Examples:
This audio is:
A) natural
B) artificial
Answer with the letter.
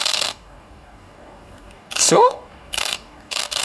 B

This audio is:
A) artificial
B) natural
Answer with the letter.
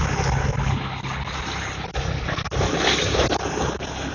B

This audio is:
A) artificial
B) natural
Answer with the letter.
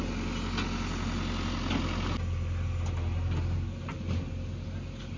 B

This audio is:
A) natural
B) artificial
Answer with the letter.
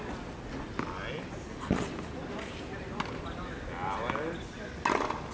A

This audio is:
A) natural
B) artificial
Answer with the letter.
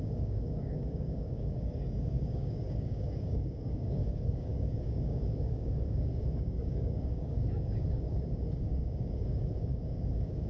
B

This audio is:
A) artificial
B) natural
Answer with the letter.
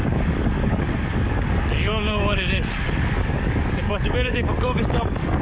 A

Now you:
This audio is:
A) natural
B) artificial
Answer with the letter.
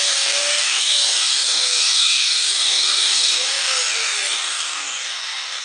B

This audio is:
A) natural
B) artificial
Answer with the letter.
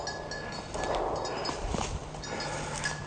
A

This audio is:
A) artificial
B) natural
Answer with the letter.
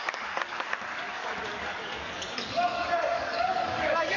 A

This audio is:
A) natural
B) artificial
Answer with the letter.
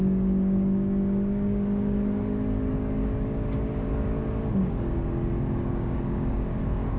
B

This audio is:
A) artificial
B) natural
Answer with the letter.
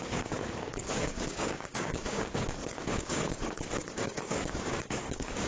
A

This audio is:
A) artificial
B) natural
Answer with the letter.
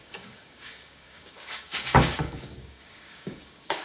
A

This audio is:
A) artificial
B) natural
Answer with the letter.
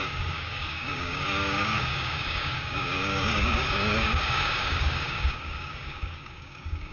A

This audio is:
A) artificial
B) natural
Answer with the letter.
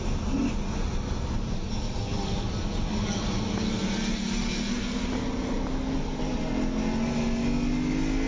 B